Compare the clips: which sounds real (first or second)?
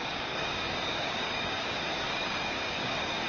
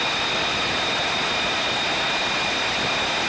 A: second